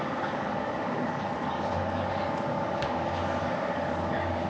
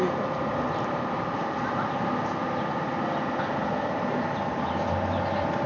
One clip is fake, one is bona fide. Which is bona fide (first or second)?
second